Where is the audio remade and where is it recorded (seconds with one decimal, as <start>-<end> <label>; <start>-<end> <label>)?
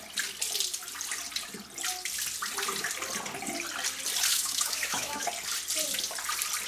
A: 0.0-4.3 recorded; 4.3-5.3 remade; 5.3-6.7 recorded